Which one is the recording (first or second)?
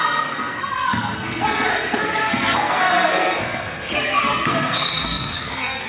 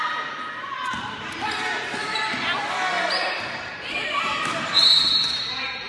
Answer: second